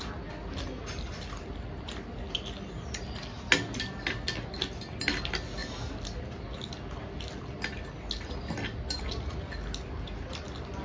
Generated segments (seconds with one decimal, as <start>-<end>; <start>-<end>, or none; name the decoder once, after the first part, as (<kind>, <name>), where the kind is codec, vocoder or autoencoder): none